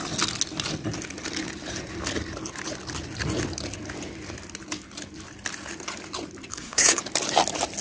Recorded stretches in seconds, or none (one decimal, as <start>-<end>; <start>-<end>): 0.0-6.5; 7.0-7.8